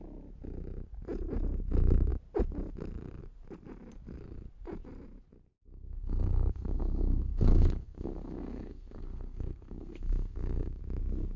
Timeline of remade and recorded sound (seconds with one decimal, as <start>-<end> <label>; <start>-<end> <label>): 0.0-5.5 recorded; 5.5-10.8 remade; 10.8-11.4 recorded